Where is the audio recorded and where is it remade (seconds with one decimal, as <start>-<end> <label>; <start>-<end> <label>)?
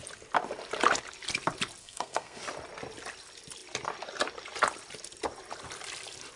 0.0-1.8 recorded; 1.8-2.4 remade; 2.4-6.4 recorded